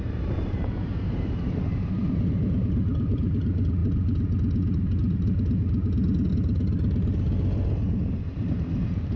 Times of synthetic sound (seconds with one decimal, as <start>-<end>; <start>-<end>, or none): 0.0-3.8; 6.3-9.2